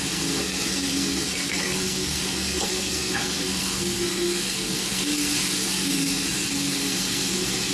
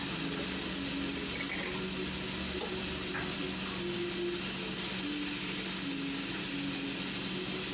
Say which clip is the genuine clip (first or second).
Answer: second